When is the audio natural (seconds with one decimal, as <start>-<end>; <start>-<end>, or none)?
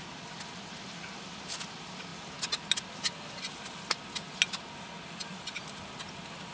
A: 0.0-6.5